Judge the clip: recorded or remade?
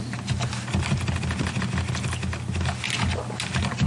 recorded